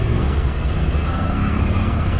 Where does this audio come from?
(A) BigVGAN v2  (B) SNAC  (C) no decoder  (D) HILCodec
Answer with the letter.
B